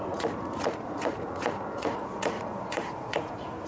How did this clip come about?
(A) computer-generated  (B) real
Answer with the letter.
A